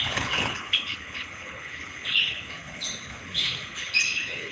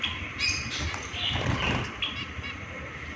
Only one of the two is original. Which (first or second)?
second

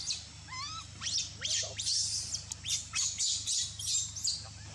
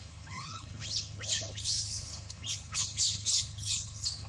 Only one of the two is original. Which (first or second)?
first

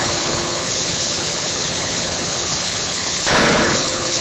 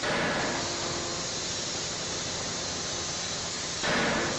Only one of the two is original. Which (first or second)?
second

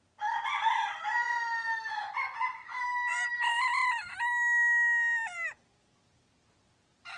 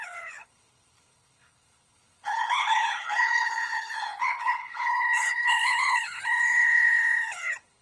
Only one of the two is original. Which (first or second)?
first